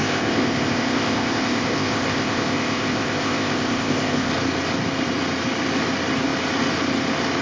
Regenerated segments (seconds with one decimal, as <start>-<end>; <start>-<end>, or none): 0.0-4.3